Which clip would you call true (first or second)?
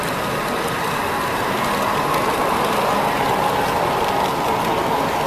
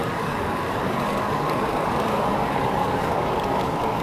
first